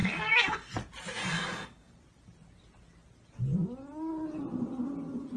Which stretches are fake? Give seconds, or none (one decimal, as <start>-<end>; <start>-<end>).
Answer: 0.0-0.7; 1.2-1.9